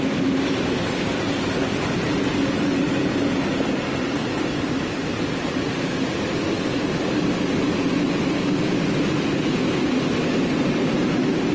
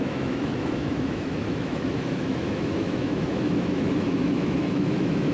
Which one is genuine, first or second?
first